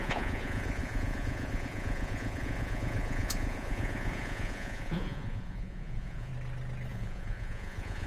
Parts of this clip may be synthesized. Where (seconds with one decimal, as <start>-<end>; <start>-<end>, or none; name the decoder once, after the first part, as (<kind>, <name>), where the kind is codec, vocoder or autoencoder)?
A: 0.0-6.3 (vocoder, Vocos); 6.9-8.1